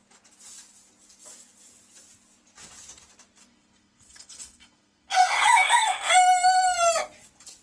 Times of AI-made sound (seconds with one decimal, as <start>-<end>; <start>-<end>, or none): 3.4-6.1